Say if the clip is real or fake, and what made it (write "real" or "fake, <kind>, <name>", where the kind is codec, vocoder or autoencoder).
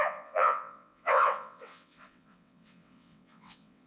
fake, vocoder, WaveNeXt